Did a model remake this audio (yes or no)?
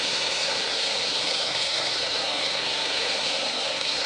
yes